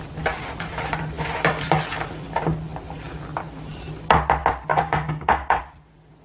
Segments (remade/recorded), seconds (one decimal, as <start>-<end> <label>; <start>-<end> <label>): 0.0-4.7 recorded; 4.7-5.6 remade; 5.6-6.2 recorded